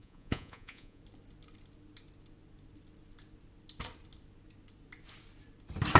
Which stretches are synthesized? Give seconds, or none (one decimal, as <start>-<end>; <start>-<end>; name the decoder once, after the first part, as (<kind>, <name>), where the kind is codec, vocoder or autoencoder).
0.0-1.0 (vocoder, Vocos)